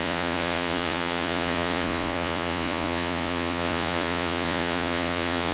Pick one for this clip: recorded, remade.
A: remade